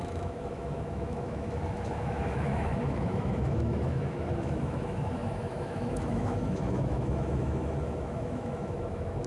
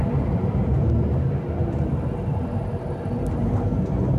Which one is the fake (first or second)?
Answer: first